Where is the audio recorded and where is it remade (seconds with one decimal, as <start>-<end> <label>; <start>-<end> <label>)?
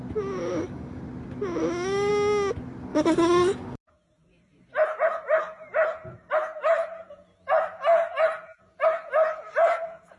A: 0.0-0.4 recorded; 0.4-1.0 remade; 1.0-1.6 recorded; 1.6-2.1 remade; 2.1-2.9 recorded; 2.9-3.9 remade; 3.9-10.2 recorded